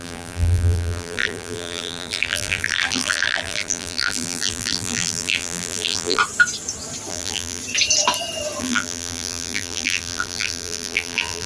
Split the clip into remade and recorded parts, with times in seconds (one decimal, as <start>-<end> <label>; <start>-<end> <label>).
0.0-6.2 remade; 6.2-7.1 recorded; 7.1-7.6 remade; 7.6-8.6 recorded; 8.6-11.5 remade